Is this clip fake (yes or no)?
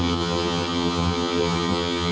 yes